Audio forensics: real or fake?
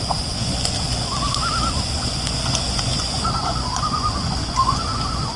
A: fake